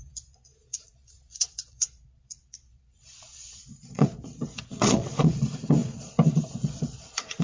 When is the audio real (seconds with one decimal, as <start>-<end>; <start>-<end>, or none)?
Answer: none